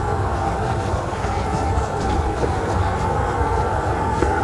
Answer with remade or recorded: remade